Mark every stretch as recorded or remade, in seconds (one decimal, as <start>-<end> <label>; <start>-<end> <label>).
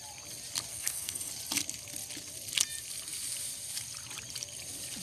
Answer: 0.0-0.7 recorded; 0.7-1.3 remade; 1.3-5.0 recorded